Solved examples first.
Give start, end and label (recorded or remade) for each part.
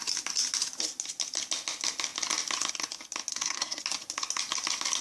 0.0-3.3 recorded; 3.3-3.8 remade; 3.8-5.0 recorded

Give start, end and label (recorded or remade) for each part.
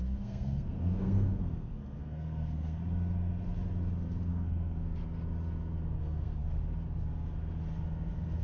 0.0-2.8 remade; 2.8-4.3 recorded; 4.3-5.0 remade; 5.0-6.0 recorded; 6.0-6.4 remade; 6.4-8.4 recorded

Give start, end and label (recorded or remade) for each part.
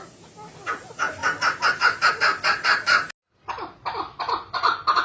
0.0-5.0 recorded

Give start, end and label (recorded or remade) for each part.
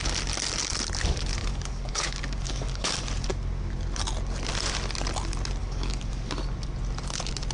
0.0-1.4 recorded; 1.4-2.9 remade; 2.9-5.6 recorded; 5.6-6.3 remade; 6.3-7.5 recorded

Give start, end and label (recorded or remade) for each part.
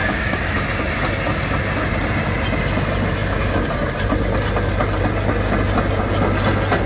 0.0-0.6 remade; 0.6-6.9 recorded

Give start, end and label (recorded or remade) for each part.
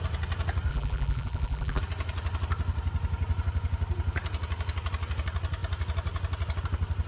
0.0-0.7 recorded; 0.7-1.8 remade; 1.8-7.1 recorded